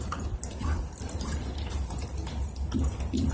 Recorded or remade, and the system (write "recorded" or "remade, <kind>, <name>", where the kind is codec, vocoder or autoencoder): recorded